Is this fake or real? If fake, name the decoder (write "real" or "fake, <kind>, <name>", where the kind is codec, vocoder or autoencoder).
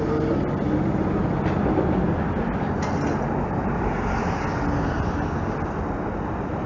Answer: real